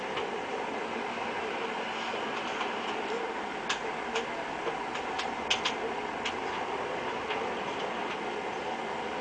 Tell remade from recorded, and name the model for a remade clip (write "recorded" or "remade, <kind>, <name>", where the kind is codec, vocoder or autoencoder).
recorded